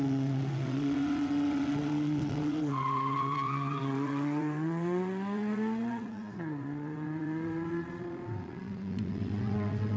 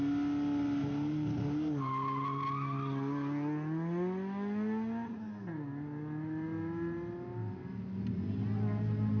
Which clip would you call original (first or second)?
second